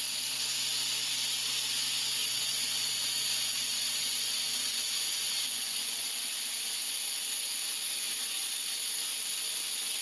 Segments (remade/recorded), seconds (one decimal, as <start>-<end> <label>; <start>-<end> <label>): 0.0-2.2 recorded; 2.2-6.1 remade; 6.1-7.8 recorded; 7.8-8.4 remade; 8.4-10.0 recorded